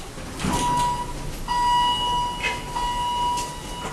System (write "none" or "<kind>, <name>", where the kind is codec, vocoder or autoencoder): none